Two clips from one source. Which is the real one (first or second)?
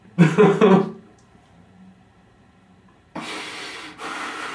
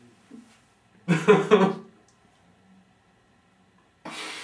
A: second